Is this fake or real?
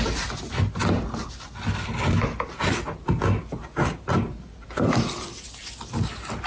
real